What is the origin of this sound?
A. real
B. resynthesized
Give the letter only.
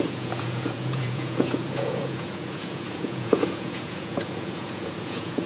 B